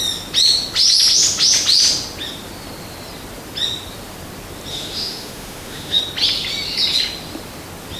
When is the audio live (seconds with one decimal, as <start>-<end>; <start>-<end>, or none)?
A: 0.0-4.7; 6.0-8.0